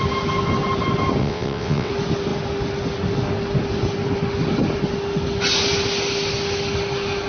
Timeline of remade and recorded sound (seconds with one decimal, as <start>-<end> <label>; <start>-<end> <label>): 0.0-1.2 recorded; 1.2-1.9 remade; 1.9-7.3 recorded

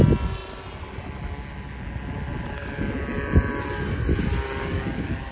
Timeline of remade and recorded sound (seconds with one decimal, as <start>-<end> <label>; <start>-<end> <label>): 0.0-5.3 recorded

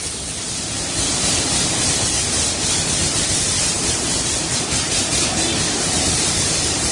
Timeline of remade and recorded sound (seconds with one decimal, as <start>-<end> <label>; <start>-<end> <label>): 0.0-6.9 remade

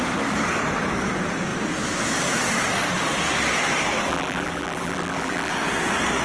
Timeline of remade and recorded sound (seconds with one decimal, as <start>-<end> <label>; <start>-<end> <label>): 0.0-4.1 recorded; 4.1-5.5 remade; 5.5-6.2 recorded

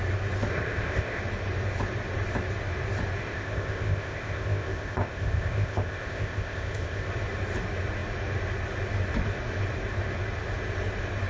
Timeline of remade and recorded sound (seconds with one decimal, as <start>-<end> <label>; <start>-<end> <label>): 0.0-0.5 recorded; 0.5-1.2 remade; 1.2-3.2 recorded; 3.2-7.1 remade; 7.1-11.3 recorded

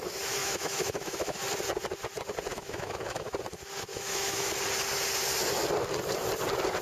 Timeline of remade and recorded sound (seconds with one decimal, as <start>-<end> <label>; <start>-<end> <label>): 0.0-0.4 recorded; 0.4-1.4 remade; 1.4-2.5 recorded; 2.5-3.3 remade; 3.3-3.9 recorded; 3.9-4.5 remade; 4.5-6.8 recorded